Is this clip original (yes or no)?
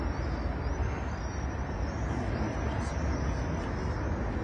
yes